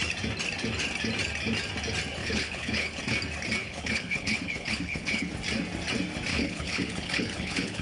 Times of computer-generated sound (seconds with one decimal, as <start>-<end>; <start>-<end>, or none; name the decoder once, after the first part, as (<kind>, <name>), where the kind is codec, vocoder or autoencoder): 2.2-3.0 (codec, HILCodec); 3.6-5.3; 6.3-7.8